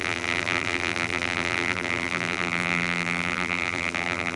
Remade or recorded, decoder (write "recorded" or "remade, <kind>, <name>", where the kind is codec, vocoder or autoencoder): remade, vocoder, BigVGAN v2